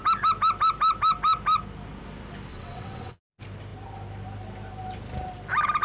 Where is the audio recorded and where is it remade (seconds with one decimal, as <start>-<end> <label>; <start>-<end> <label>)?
0.0-2.5 recorded; 2.5-3.2 remade; 3.2-5.8 recorded